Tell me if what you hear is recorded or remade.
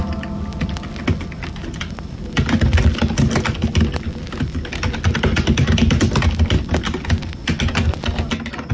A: recorded